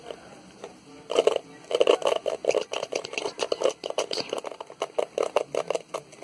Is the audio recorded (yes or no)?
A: yes